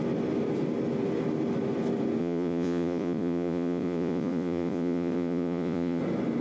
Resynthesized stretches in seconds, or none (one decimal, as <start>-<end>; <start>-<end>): 2.2-6.0